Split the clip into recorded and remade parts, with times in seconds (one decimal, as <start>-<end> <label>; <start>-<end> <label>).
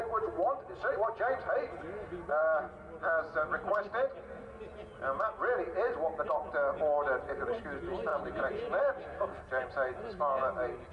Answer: 0.0-8.1 recorded; 8.1-8.8 remade; 8.8-10.9 recorded